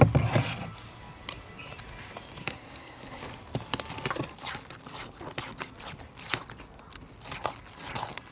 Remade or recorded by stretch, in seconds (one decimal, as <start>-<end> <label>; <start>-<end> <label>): 0.0-2.4 recorded; 2.4-3.2 remade; 3.2-8.3 recorded